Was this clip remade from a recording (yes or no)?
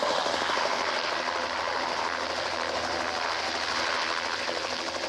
no